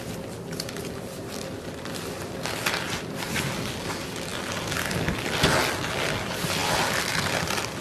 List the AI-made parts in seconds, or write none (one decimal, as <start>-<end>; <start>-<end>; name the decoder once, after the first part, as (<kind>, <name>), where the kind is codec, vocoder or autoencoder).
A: none

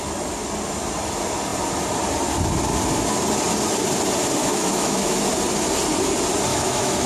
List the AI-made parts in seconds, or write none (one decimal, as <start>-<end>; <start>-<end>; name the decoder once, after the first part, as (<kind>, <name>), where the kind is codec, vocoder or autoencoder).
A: 4.4-5.2 (autoencoder, DAC-VAE); 6.5-7.1

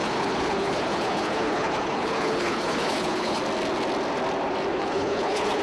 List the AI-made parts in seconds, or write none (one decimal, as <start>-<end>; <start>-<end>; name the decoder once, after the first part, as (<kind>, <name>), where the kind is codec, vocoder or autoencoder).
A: 0.0-3.4 (codec, HILCodec); 4.7-5.6

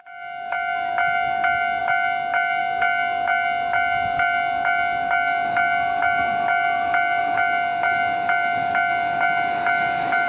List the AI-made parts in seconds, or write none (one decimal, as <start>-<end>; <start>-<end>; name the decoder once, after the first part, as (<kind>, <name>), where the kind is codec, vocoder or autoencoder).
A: none

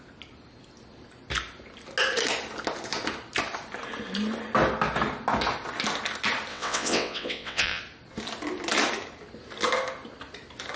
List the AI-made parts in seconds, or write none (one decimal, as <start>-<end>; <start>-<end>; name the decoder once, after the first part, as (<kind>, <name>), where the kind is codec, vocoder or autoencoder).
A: 6.5-7.8 (vocoder, WaveNeXt)

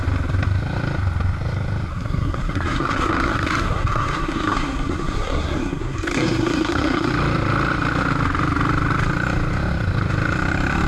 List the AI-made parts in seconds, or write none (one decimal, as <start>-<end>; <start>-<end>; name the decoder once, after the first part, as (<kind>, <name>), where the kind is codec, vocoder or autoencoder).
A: 1.9-7.1 (codec, SNAC)